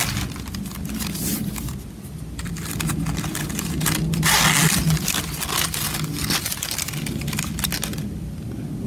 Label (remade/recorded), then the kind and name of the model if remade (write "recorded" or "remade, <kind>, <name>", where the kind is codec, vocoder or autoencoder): recorded